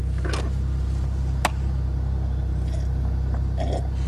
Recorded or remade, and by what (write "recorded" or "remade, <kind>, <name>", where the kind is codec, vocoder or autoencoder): recorded